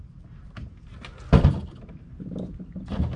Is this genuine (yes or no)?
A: yes